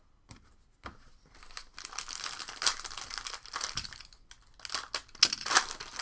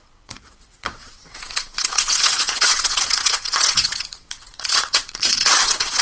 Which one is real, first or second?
first